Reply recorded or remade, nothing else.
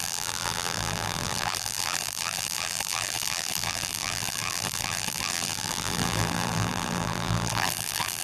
remade